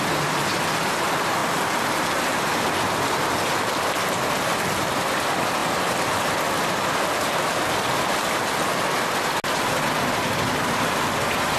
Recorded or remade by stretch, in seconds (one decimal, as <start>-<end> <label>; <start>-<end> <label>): 0.0-11.6 recorded